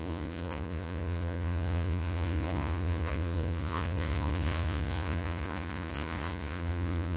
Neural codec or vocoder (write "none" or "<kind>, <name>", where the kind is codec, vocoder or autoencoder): vocoder, Vocos